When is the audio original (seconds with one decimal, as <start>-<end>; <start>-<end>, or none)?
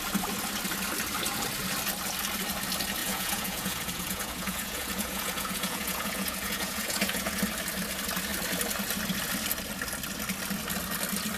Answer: 0.0-3.0; 7.4-11.4